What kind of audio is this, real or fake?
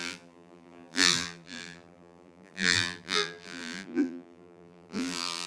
fake